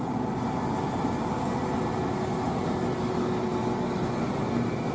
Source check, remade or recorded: recorded